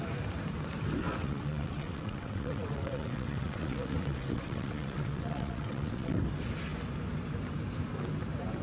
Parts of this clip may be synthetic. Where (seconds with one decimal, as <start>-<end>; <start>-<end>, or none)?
1.0-6.2